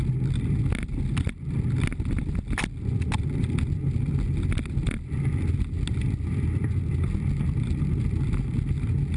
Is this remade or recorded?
recorded